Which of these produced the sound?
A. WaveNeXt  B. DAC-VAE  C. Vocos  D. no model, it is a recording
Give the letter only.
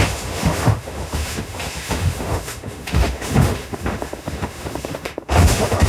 B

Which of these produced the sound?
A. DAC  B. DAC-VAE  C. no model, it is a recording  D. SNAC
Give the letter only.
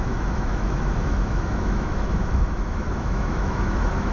B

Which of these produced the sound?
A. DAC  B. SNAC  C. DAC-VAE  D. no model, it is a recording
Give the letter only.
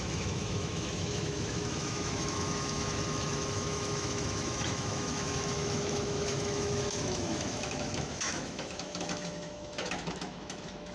C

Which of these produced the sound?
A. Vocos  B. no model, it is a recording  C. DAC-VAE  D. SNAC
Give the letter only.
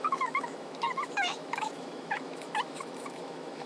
C